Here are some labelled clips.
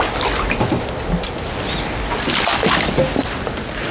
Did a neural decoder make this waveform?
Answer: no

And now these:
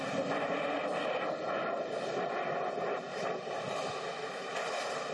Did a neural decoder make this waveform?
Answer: no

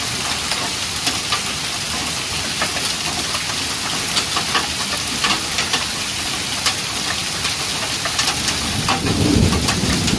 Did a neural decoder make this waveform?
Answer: no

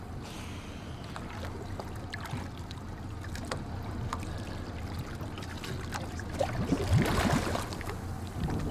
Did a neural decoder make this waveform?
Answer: no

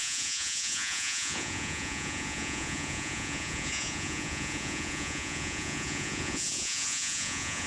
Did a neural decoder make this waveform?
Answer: yes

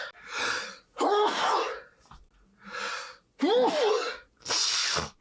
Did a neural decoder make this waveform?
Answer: no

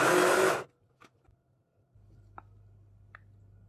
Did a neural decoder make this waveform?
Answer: no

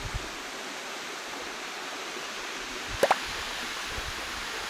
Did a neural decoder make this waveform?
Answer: no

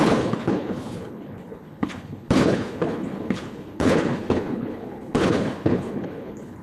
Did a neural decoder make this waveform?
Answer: yes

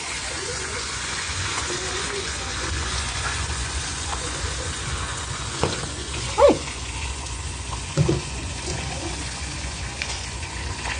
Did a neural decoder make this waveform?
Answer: yes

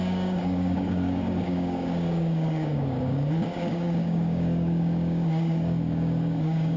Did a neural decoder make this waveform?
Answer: yes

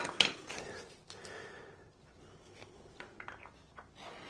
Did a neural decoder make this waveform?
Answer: no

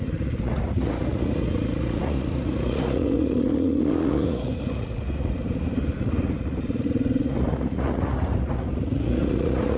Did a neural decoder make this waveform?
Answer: yes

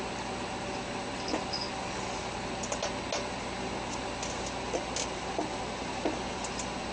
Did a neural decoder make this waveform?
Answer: no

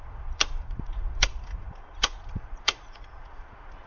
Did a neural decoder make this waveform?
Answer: yes